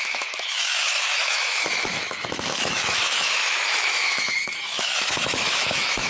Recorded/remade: remade